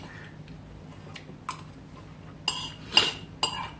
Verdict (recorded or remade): recorded